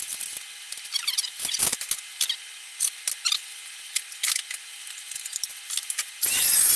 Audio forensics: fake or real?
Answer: real